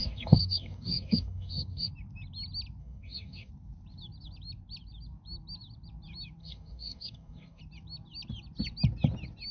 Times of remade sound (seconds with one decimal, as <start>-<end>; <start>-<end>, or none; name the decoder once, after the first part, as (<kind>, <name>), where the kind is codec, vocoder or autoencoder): 0.0-1.9 (codec, DAC); 2.8-3.5; 6.4-7.6